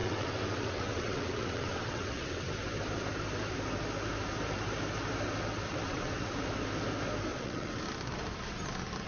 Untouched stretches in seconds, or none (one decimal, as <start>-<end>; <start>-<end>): 2.5-5.7; 6.3-7.3; 7.8-9.1